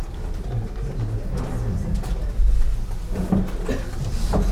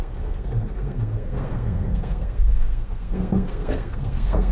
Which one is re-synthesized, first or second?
second